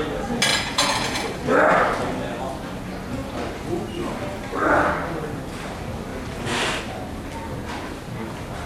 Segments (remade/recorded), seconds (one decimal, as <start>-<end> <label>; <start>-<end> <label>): 0.0-0.5 recorded; 0.5-1.2 remade; 1.2-8.7 recorded